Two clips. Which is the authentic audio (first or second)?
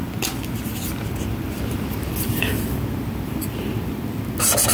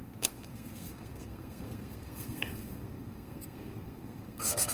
first